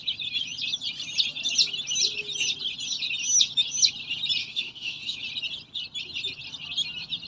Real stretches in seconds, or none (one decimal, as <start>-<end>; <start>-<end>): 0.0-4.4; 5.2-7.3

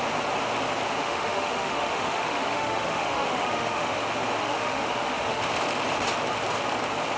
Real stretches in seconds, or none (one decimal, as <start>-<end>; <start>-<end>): 0.0-1.0; 4.0-4.4; 5.4-7.2

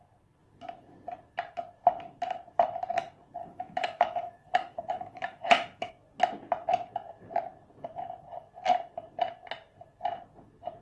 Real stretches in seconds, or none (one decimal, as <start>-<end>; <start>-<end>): 0.0-3.4; 5.9-10.8

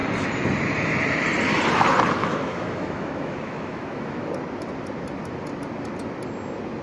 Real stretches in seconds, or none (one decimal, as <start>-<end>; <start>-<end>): 0.0-2.2; 4.3-6.8